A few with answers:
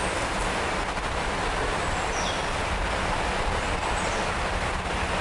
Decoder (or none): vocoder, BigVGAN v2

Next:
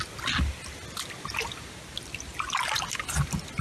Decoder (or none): none